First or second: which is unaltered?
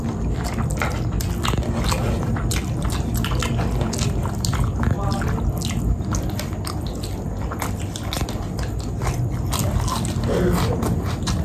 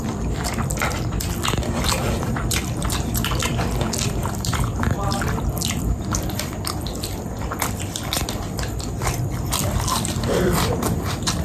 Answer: first